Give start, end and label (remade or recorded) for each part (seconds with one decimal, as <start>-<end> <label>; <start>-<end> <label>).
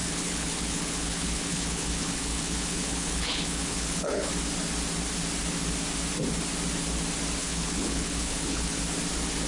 0.0-4.3 remade; 4.3-7.4 recorded; 7.4-8.8 remade; 8.8-9.5 recorded